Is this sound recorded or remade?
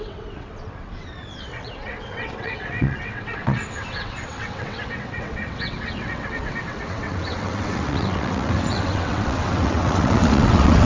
remade